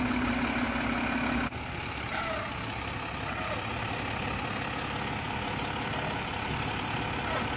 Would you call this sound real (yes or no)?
yes